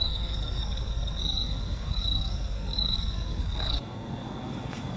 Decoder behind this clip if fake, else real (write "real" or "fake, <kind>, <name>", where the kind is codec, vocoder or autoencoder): fake, codec, SNAC